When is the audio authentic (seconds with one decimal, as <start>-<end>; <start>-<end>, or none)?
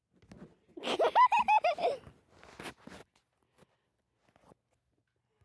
0.0-1.1; 2.4-5.4